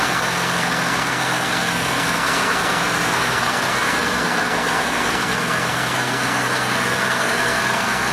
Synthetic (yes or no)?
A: yes